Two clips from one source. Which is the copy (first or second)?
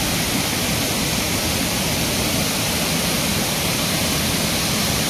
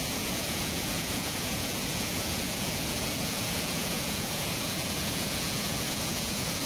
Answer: second